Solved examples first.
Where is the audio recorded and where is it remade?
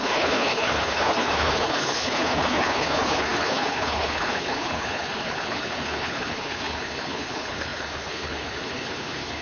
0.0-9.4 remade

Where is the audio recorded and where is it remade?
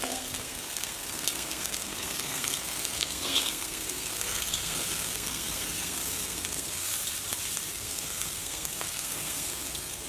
0.0-6.9 remade; 6.9-7.7 recorded; 7.7-10.1 remade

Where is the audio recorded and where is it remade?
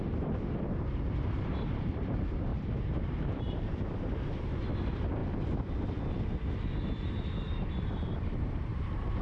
0.0-2.5 recorded; 2.5-3.8 remade; 3.8-8.1 recorded; 8.1-9.2 remade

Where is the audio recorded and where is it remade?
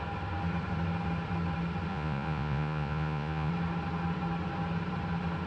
0.0-1.9 recorded; 1.9-3.5 remade; 3.5-5.5 recorded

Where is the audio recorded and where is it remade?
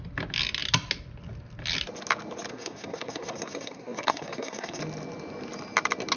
0.0-2.5 recorded; 2.5-4.8 remade; 4.8-6.2 recorded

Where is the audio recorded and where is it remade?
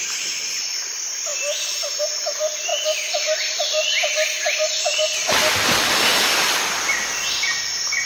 0.0-8.1 recorded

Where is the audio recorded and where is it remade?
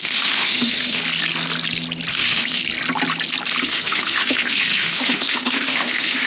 0.0-1.0 remade; 1.0-2.1 recorded; 2.1-2.6 remade; 2.6-3.6 recorded; 3.6-6.3 remade